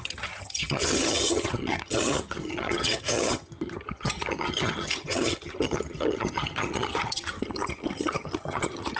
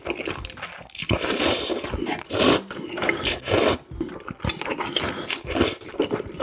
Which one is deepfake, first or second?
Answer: first